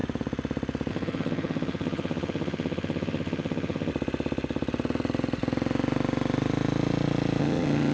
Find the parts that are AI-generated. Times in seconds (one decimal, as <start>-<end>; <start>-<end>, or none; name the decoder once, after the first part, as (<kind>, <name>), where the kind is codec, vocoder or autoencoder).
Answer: 0.9-3.9 (vocoder, HiFi-GAN); 7.4-7.9